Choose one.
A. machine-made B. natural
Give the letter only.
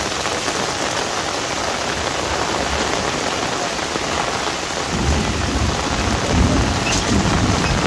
B